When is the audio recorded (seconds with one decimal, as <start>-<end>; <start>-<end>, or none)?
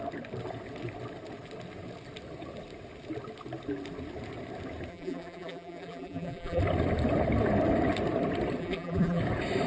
0.0-4.9; 6.6-8.6; 9.2-9.7